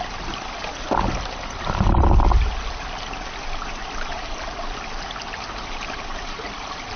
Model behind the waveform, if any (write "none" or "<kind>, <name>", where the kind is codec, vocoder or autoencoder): none